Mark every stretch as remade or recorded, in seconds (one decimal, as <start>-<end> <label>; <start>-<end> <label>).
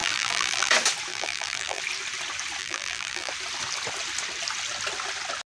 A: 0.0-0.7 remade; 0.7-1.1 recorded; 1.1-1.8 remade; 1.8-2.6 recorded; 2.6-3.3 remade; 3.3-5.5 recorded